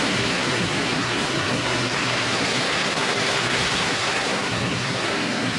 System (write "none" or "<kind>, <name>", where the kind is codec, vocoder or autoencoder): codec, SNAC